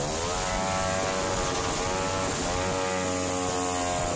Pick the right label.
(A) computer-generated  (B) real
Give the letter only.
B